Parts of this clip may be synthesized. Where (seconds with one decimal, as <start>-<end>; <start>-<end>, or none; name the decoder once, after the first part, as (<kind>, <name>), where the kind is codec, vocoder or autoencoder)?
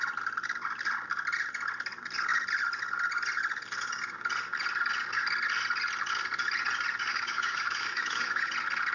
7.1-8.5 (autoencoder, DAC-VAE)